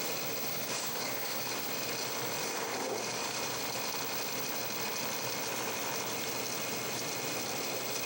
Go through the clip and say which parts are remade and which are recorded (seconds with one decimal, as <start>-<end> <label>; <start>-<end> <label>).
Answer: 0.0-0.5 recorded; 0.5-1.7 remade; 1.7-2.4 recorded; 2.4-3.6 remade; 3.6-8.1 recorded